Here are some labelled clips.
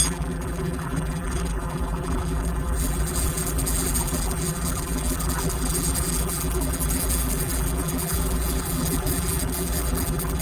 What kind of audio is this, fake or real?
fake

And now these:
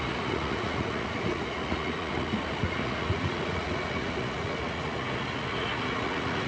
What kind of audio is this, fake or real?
fake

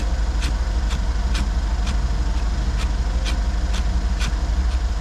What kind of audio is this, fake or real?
real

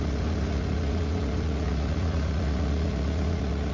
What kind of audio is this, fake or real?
fake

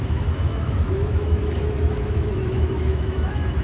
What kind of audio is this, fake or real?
fake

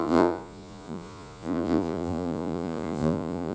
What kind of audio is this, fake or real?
fake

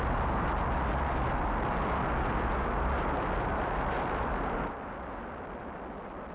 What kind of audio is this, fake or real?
real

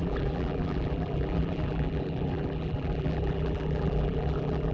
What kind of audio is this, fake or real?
fake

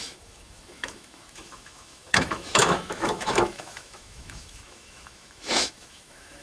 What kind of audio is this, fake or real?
fake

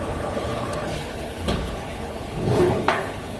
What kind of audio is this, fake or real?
fake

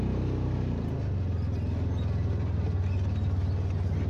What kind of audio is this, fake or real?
real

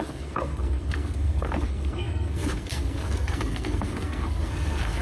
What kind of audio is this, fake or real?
fake